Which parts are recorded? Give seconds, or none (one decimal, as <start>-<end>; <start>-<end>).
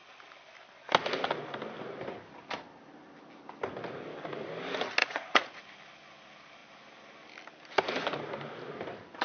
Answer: 0.0-5.0; 5.6-9.2